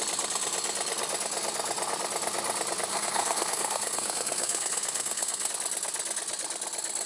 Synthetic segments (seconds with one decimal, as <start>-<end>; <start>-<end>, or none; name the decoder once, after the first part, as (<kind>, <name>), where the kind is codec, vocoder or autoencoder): 2.9-5.5 (codec, SNAC)